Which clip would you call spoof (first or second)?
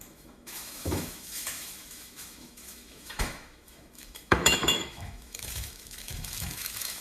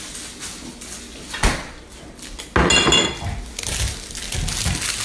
first